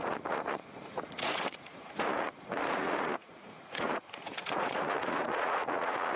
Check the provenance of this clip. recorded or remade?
remade